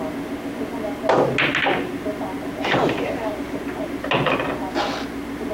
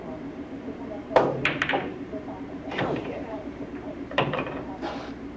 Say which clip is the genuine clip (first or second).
first